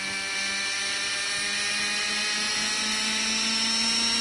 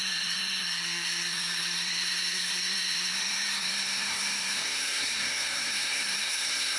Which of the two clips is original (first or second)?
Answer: first